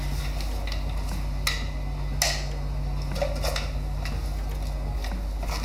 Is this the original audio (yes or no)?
yes